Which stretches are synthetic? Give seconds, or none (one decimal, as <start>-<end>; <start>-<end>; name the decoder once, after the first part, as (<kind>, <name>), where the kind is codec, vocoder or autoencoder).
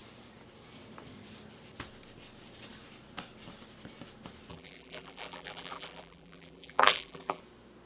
4.5-7.4 (vocoder, BigVGAN v2)